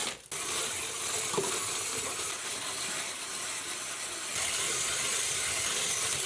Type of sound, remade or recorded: recorded